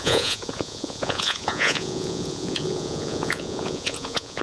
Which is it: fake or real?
fake